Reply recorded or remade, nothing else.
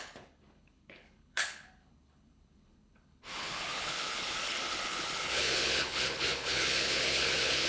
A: remade